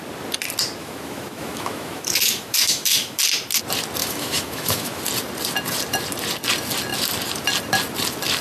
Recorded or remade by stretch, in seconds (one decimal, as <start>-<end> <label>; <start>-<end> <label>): 0.0-0.8 recorded; 0.8-3.2 remade; 3.2-4.0 recorded; 4.0-5.0 remade; 5.0-8.4 recorded